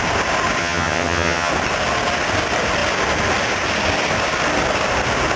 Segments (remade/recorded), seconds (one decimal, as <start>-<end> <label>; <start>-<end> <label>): 0.0-0.6 recorded; 0.6-1.5 remade; 1.5-5.4 recorded